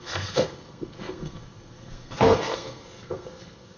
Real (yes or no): no